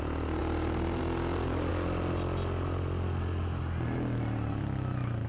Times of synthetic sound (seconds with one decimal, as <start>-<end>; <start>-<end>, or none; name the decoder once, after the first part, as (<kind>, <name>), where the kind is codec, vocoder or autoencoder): 0.4-1.0 (vocoder, BigVGAN v2)